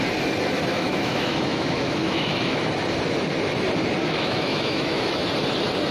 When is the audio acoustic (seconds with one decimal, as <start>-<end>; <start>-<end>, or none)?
0.0-0.7; 2.6-4.0; 5.2-5.9